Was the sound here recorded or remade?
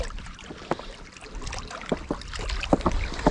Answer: recorded